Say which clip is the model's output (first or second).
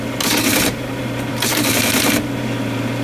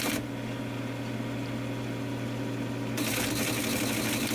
first